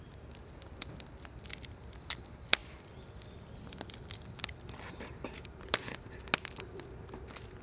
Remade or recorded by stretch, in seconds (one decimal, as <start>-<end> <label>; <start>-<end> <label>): 0.0-7.6 recorded